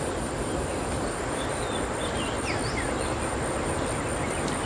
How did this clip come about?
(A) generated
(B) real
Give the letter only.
B